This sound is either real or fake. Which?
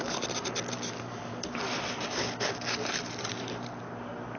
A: real